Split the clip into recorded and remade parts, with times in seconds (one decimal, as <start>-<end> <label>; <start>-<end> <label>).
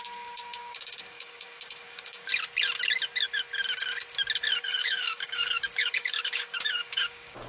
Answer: 0.0-2.3 remade; 2.3-4.6 recorded; 4.6-7.5 remade